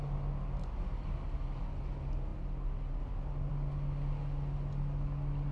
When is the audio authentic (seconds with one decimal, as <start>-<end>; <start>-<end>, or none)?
0.0-5.5